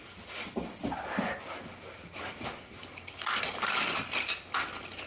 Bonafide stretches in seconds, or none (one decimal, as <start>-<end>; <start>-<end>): 0.0-5.1